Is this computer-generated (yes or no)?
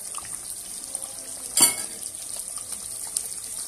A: no